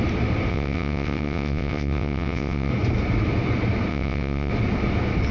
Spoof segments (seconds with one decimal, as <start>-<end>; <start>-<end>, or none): 0.5-2.7; 3.9-4.5